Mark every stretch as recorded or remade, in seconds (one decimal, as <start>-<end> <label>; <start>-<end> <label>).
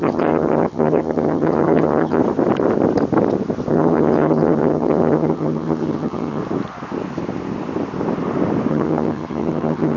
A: 0.0-2.2 remade; 2.2-3.7 recorded; 3.7-6.4 remade; 6.4-8.7 recorded; 8.7-10.0 remade